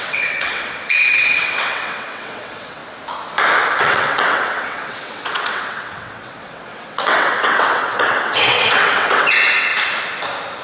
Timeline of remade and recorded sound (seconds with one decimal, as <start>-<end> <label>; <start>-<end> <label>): 0.0-2.8 remade; 2.8-3.8 recorded; 3.8-9.7 remade; 9.7-10.6 recorded